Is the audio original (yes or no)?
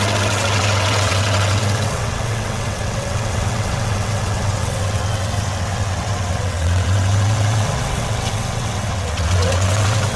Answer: no